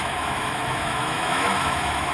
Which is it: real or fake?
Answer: fake